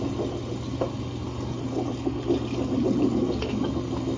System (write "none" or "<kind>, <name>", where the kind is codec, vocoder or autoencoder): none